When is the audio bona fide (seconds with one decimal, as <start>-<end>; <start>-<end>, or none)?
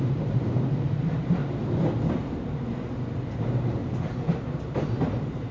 1.4-3.4; 3.8-4.5